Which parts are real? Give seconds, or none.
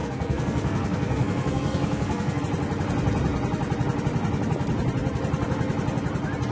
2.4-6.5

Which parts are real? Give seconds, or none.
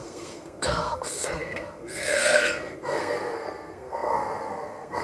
none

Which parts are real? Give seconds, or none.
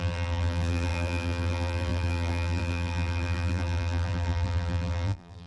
none